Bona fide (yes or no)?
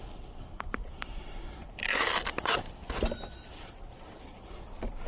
no